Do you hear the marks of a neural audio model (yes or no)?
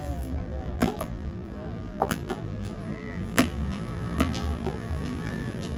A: yes